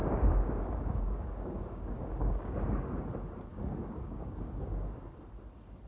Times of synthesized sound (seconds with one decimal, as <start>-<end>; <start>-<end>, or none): 0.0-2.5; 3.5-4.6